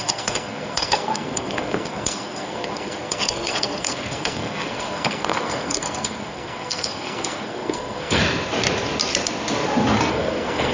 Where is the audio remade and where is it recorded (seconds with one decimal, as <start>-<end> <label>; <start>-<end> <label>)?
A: 0.0-8.2 remade; 8.2-10.1 recorded; 10.1-10.7 remade

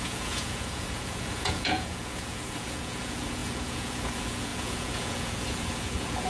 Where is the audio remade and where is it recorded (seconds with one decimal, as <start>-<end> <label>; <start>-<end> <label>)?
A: 0.0-6.3 remade